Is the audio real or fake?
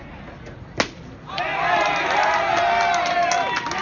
real